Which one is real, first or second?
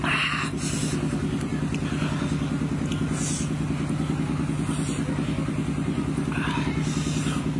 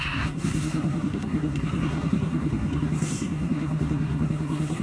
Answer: first